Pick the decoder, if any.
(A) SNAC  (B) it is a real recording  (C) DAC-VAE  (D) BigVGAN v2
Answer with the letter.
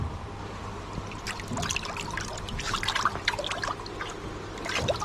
B